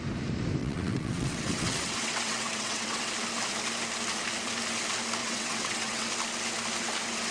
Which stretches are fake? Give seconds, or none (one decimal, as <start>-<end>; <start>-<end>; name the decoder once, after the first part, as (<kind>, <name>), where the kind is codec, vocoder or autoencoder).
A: 0.6-3.1 (vocoder, WaveNeXt); 5.2-6.1